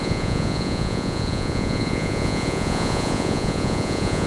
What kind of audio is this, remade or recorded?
remade